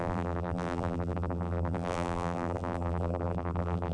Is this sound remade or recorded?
remade